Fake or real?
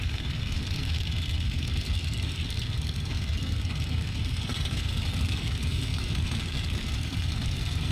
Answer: fake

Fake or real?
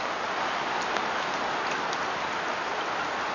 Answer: real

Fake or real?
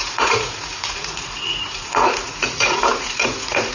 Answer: fake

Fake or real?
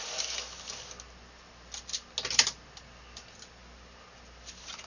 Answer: real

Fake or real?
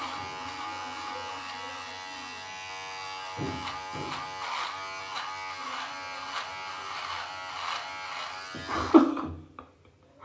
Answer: real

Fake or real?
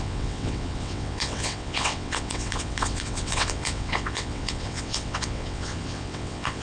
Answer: fake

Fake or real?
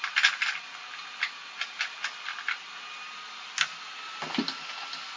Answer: real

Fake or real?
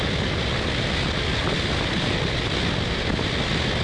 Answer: real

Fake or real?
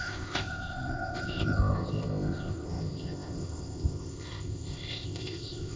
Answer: fake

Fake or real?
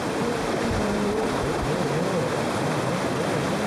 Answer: fake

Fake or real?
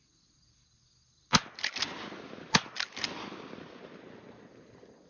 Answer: real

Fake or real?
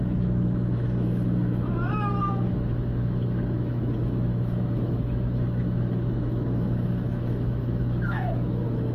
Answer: fake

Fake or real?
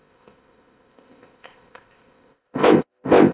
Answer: fake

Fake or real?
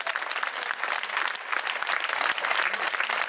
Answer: real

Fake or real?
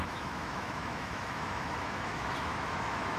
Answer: fake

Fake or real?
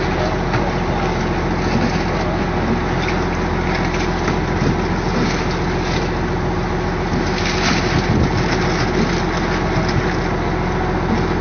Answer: real